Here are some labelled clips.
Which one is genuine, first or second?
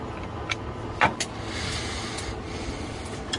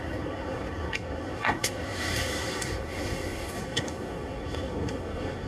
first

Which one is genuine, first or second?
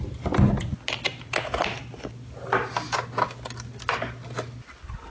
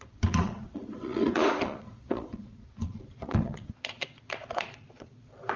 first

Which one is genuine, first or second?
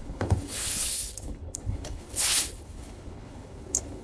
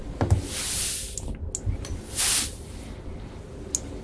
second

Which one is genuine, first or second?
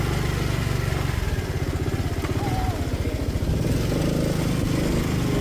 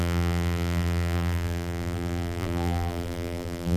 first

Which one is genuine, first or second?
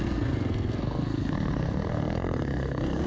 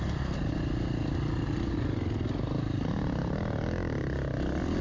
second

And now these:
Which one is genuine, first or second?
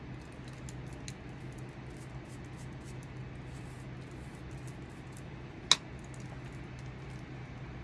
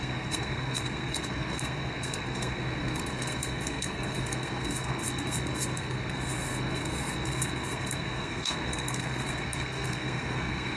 first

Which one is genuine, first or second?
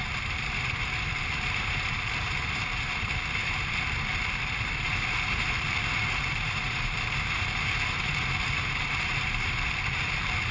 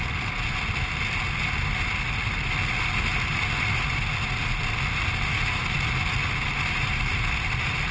second